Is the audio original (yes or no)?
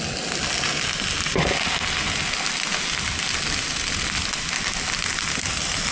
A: yes